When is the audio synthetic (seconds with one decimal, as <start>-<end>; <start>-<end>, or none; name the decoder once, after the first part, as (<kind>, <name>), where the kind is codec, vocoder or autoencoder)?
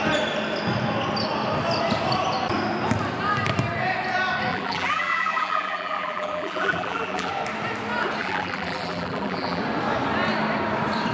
4.5-7.3 (vocoder, BigVGAN v2); 8.2-9.6